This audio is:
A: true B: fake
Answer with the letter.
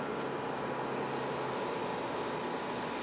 A